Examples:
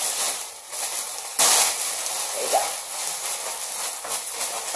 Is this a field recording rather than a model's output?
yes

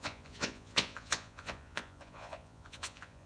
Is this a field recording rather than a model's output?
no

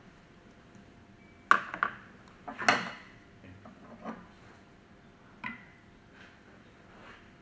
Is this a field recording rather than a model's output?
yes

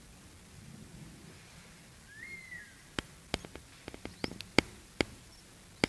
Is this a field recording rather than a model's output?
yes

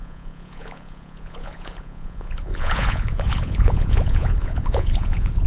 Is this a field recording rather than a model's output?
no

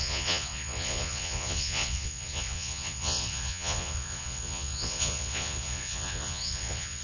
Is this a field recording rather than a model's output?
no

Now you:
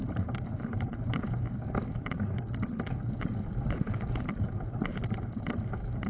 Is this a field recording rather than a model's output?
yes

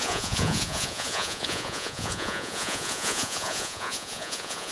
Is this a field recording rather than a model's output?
no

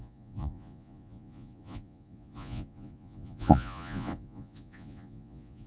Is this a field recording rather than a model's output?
no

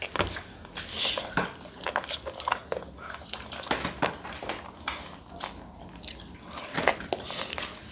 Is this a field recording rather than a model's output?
yes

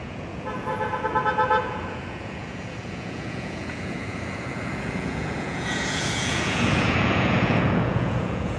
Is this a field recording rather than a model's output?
no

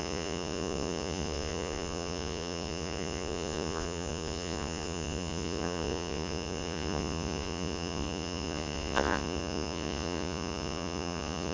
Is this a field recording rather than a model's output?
no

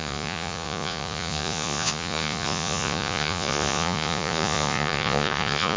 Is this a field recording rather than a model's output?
no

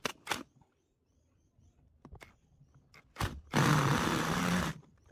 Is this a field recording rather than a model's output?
yes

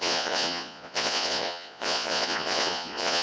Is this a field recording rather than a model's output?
no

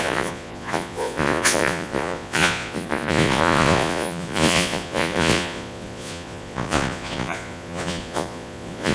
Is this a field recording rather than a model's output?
no